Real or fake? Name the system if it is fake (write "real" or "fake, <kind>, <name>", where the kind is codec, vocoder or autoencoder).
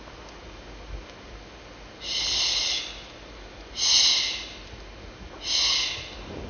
real